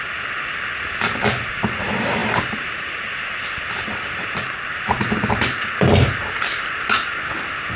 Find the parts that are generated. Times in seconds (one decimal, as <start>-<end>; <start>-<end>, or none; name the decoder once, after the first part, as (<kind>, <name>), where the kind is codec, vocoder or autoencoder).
none